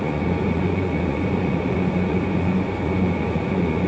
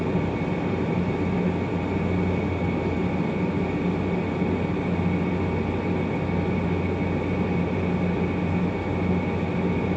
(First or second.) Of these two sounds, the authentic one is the second